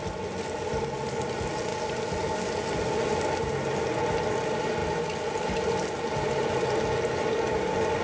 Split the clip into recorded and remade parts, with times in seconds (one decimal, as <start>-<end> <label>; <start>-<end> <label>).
0.0-8.0 recorded